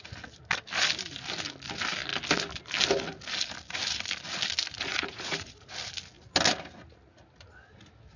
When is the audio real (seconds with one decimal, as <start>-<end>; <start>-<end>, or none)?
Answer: 0.0-4.9; 5.7-8.2

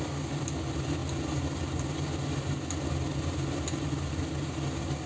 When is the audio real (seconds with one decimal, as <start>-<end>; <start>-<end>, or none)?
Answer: 0.0-5.1

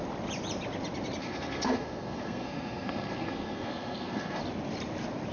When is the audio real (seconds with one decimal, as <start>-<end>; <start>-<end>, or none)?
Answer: 0.0-1.2; 4.4-5.3

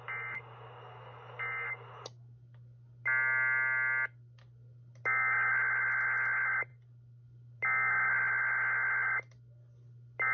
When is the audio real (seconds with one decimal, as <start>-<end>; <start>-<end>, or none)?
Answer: 0.0-10.3

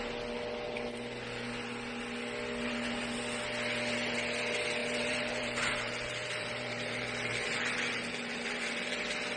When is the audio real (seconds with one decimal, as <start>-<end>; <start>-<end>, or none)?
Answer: 0.0-4.8; 9.0-9.4